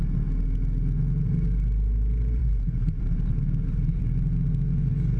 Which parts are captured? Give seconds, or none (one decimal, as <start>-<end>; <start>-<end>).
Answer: 0.0-2.4; 4.0-5.2

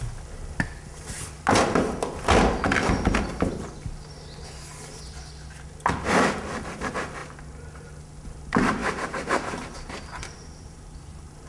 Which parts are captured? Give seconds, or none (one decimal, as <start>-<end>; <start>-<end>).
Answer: 0.0-8.8

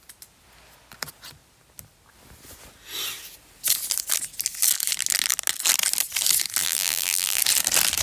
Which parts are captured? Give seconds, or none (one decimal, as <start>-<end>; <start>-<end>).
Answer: 0.0-6.6; 7.4-8.0

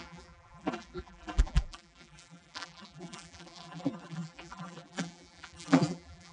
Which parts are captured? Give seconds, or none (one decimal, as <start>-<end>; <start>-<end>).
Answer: none

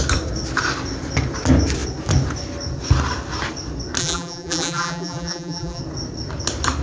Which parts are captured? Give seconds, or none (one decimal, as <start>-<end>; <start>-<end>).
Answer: 0.0-4.0; 5.8-6.8

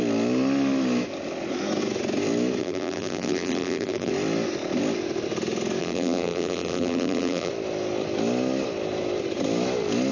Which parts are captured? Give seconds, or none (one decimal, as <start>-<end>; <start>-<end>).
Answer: 0.0-2.6; 4.1-5.8; 7.5-10.1